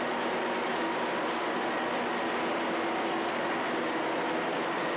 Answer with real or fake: real